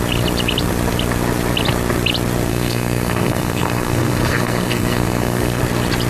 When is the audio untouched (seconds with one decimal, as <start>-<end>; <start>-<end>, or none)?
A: 0.0-2.5; 5.6-6.1